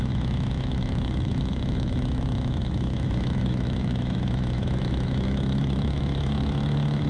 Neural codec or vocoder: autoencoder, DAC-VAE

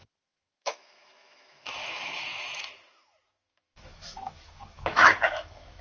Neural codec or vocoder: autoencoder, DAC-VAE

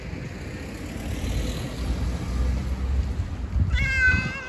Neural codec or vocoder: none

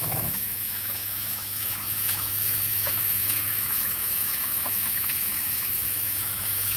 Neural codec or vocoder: autoencoder, DAC-VAE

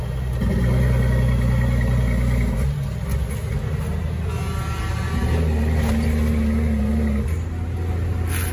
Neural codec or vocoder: none